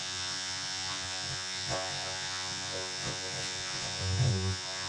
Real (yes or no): no